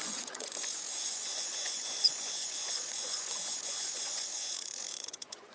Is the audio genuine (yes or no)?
no